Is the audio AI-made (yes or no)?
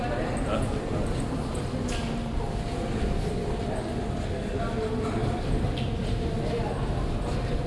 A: no